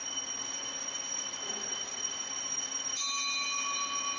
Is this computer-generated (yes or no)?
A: no